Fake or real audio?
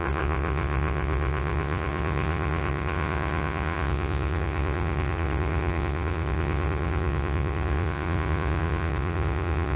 fake